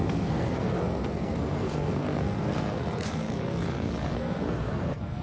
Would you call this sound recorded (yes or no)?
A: no